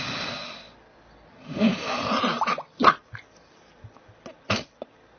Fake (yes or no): no